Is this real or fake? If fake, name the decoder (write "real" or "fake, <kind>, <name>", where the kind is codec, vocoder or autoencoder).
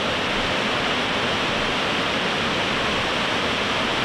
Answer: real